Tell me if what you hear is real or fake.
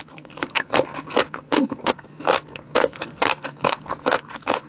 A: fake